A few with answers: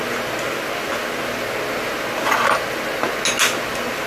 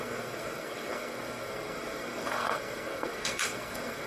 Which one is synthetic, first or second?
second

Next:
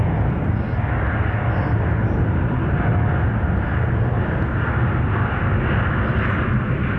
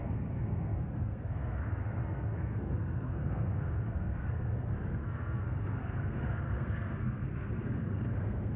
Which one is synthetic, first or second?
second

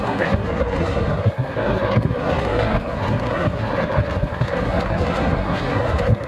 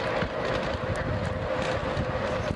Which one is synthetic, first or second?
first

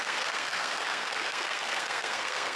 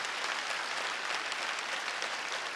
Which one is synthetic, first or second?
first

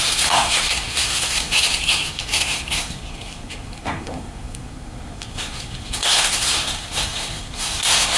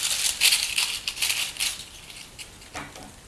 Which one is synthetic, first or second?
first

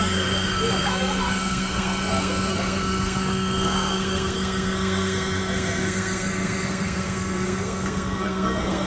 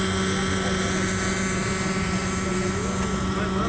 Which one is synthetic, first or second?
first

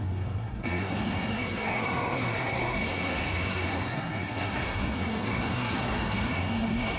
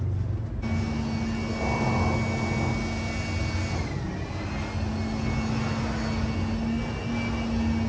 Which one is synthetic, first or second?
first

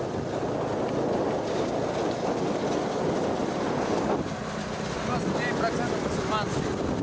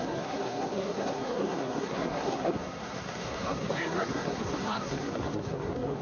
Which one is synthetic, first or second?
second